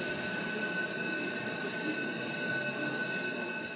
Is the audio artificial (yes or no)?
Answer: no